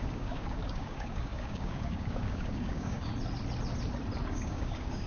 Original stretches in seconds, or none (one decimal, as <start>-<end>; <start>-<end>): 3.1-4.3